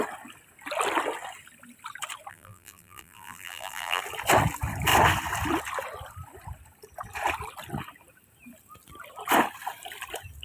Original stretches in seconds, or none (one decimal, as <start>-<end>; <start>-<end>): 0.0-2.3; 4.0-10.4